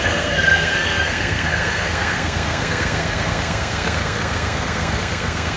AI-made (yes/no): yes